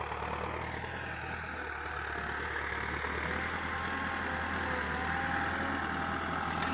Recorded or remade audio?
recorded